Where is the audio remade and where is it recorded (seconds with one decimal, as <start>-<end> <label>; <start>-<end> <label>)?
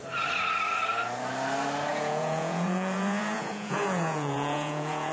0.0-1.9 recorded; 1.9-5.1 remade